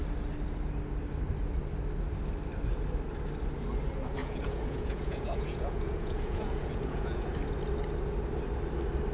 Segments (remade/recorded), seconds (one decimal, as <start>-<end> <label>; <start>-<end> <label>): 0.0-4.2 recorded; 4.2-7.3 remade; 7.3-9.1 recorded